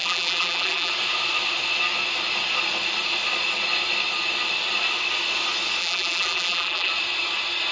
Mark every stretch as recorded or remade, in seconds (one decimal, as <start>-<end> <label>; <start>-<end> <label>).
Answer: 0.0-0.9 remade; 0.9-5.8 recorded; 5.8-6.9 remade; 6.9-7.7 recorded